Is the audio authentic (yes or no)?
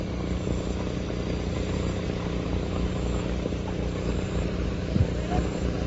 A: no